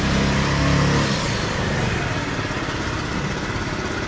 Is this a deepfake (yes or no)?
no